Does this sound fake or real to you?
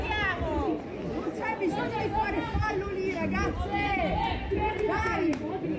real